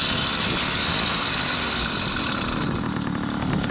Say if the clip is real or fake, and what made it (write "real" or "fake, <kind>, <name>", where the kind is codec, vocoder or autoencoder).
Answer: real